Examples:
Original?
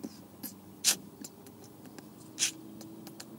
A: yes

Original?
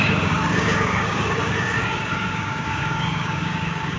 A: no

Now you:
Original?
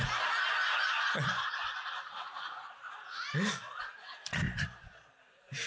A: yes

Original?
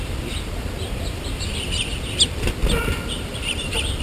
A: no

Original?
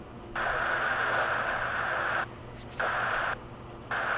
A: yes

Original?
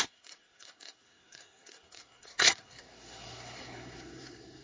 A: no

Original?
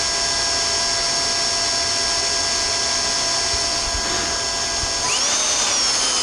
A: yes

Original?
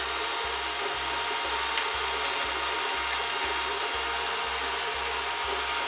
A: yes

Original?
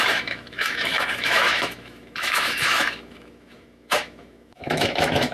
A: no